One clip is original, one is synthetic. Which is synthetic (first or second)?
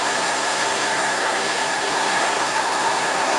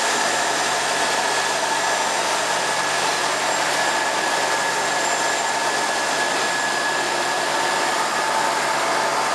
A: first